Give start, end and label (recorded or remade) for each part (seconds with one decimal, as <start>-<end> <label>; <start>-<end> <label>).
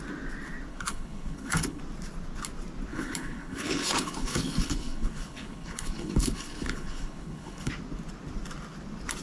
0.0-0.7 recorded; 0.7-1.8 remade; 1.8-2.9 recorded; 2.9-7.7 remade; 7.7-9.2 recorded